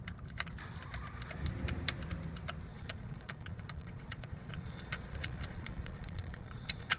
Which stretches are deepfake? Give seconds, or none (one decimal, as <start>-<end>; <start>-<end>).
2.7-7.0